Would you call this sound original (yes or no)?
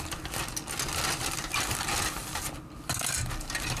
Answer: yes